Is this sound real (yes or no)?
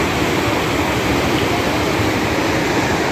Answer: yes